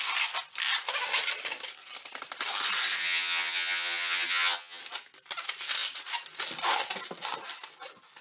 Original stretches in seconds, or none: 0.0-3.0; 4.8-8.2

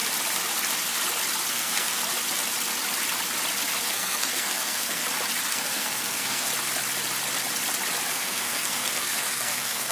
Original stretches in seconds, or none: 0.0-1.5; 2.0-3.8; 5.0-5.5; 6.5-8.1

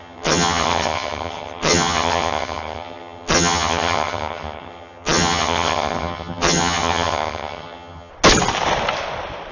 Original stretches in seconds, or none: 8.1-9.5

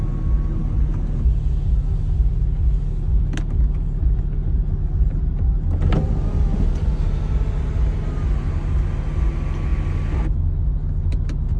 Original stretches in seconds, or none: 0.0-11.6

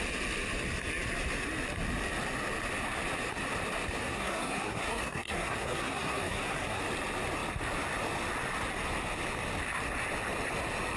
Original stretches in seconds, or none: 0.0-4.0; 6.8-11.0

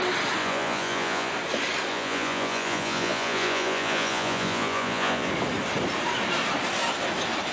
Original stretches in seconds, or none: 0.0-0.4; 1.3-1.9; 5.3-7.5